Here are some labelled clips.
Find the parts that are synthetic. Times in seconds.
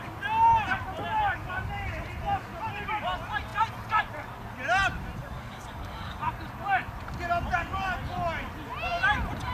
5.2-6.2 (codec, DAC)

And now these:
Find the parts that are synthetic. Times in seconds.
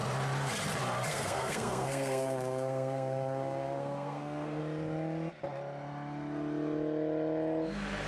1.1-4.6 (codec, SNAC)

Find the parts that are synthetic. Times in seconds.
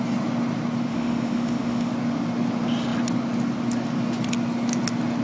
0.9-1.9 (autoencoder, DAC-VAE)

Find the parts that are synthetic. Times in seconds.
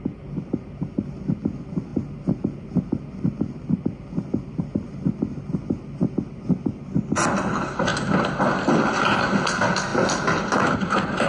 none